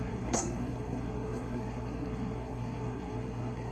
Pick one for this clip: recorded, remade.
remade